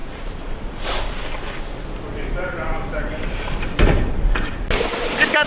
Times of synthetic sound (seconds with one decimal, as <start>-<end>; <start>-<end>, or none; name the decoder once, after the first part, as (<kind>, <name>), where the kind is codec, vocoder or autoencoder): 0.0-0.8 (vocoder, BigVGAN v2); 2.1-4.5